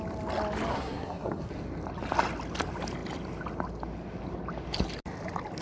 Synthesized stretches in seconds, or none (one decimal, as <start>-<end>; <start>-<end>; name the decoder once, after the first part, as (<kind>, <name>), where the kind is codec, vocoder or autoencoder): 0.7-1.5 (codec, SNAC)